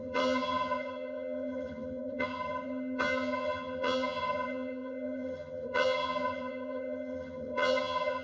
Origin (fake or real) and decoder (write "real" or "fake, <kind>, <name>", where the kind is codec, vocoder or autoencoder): fake, vocoder, HiFi-GAN